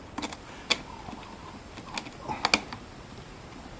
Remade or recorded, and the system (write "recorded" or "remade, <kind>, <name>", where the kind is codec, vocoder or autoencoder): recorded